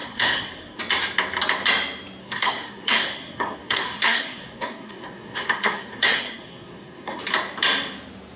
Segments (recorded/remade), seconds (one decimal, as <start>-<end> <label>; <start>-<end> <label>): 0.0-0.8 remade; 0.8-2.2 recorded; 2.2-7.2 remade; 7.2-8.4 recorded